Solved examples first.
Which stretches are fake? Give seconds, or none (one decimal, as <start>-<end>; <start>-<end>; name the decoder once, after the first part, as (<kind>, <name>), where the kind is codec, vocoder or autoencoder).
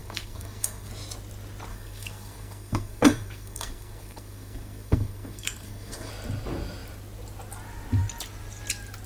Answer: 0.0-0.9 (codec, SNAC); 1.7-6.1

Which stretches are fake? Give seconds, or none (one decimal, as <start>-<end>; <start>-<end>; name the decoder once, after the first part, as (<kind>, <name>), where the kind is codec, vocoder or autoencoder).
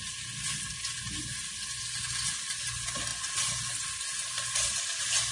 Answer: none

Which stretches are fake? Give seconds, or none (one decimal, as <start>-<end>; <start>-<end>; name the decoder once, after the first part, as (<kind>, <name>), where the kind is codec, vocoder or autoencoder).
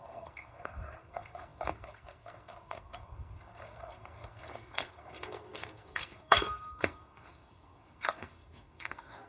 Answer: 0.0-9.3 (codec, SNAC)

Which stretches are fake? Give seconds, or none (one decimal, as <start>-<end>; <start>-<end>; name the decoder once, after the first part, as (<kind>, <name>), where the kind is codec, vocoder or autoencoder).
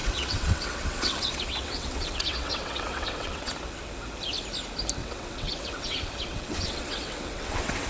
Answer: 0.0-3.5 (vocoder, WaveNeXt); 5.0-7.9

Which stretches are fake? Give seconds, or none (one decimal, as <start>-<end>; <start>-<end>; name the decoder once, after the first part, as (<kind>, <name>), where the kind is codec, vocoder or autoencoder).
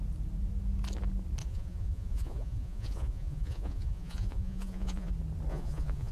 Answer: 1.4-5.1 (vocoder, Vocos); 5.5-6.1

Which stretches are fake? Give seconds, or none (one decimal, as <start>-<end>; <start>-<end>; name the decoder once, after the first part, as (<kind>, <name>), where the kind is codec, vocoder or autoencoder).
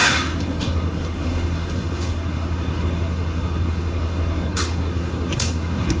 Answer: 0.0-6.0 (codec, SNAC)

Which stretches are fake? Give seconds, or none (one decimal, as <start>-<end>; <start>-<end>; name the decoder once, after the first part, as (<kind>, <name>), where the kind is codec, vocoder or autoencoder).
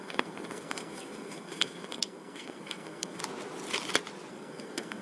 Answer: 0.0-3.2 (codec, SNAC); 4.3-5.0